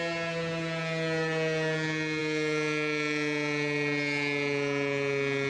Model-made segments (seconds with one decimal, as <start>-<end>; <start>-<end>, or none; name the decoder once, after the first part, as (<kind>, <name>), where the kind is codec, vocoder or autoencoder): none